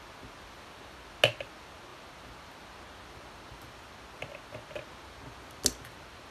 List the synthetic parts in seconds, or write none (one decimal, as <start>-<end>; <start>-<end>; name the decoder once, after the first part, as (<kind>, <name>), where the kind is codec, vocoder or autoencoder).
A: none